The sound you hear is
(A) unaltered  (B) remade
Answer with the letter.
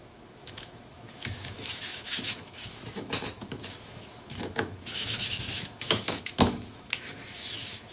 B